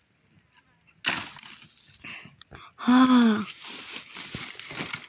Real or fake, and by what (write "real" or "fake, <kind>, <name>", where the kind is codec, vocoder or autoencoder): real